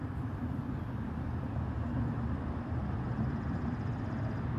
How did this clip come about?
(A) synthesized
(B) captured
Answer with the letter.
B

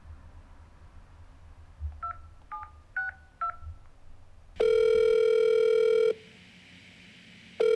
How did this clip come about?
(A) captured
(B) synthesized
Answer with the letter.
A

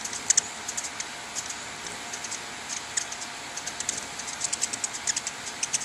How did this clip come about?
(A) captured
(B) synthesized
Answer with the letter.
A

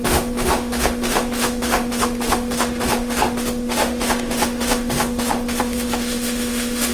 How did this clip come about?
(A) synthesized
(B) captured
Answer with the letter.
A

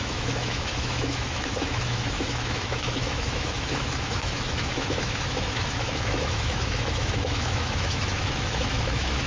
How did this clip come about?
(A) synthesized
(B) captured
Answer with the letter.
A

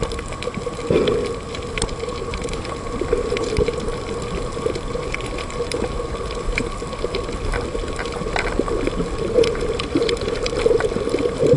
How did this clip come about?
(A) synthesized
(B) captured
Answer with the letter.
B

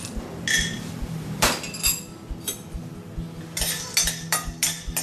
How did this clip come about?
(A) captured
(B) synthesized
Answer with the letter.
A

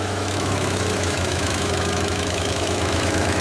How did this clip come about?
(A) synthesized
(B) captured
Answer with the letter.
A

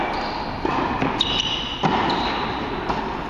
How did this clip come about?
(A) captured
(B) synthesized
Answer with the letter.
A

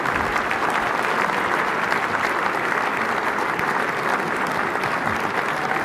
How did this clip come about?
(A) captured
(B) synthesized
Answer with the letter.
A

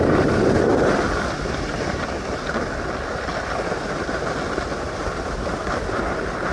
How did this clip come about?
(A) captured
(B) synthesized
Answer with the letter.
A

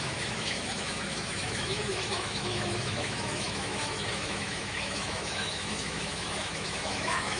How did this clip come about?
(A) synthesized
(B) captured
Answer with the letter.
A